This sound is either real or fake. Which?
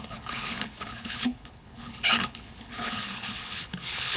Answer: fake